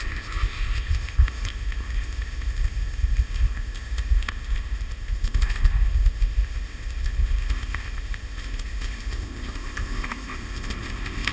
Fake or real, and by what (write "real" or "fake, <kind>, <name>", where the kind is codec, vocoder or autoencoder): fake, codec, ZipCodec